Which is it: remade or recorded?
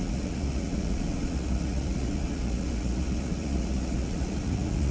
remade